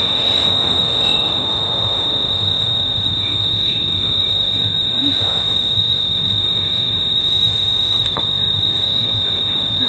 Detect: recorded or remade remade